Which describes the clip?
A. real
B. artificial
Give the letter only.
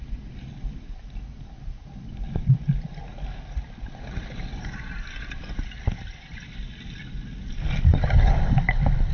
A